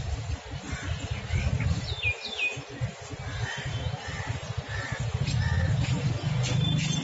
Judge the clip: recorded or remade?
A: recorded